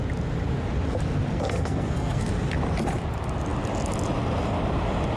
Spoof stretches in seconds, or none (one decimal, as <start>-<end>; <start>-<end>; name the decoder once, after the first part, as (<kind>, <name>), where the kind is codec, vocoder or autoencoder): 1.3-2.3 (codec, SNAC)